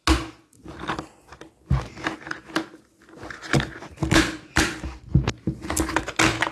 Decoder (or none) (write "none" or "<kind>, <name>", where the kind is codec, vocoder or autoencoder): none